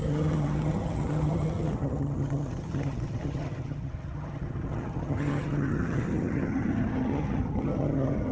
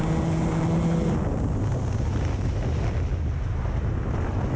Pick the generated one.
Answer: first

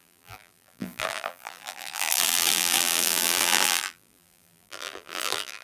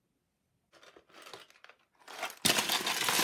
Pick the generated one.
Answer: first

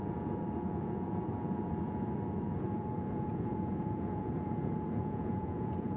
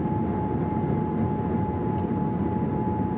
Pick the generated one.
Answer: first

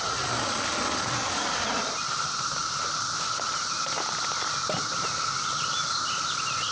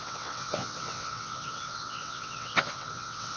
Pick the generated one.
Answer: second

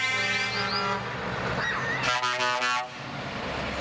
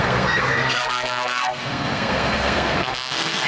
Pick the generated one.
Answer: second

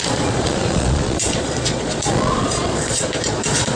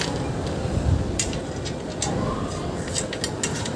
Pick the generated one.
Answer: first